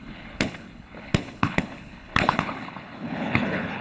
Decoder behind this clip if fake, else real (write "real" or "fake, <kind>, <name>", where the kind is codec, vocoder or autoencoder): fake, codec, HILCodec